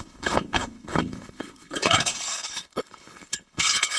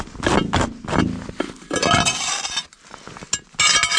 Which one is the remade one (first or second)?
first